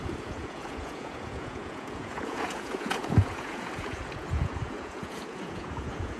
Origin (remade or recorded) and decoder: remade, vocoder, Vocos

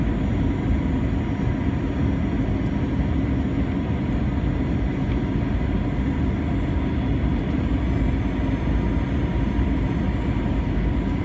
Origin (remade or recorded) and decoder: recorded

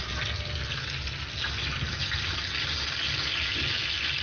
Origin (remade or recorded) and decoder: recorded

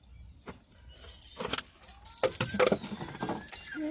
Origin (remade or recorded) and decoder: recorded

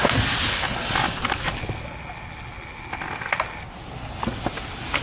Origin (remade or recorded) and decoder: recorded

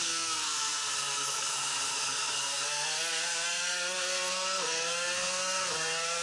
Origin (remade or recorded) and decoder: remade, codec, SNAC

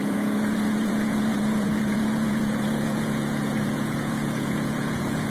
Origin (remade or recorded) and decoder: remade, vocoder, Vocos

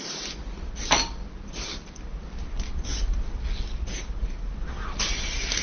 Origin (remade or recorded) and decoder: recorded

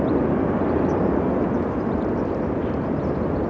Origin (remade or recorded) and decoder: recorded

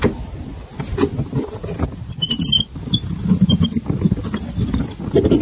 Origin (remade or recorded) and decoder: recorded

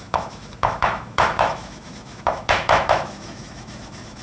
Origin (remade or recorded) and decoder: remade, autoencoder, DAC-VAE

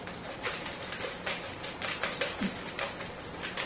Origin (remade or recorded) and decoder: remade, vocoder, BigVGAN v2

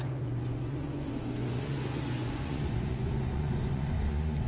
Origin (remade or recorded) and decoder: remade, vocoder, Vocos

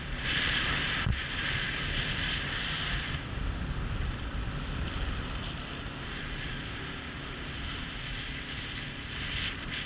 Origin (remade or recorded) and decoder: recorded